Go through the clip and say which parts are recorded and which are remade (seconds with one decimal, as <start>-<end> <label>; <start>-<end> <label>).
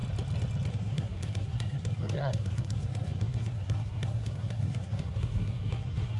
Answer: 0.0-0.7 recorded; 0.7-6.2 remade